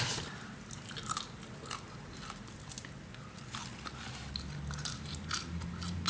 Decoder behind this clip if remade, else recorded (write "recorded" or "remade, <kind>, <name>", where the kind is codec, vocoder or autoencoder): recorded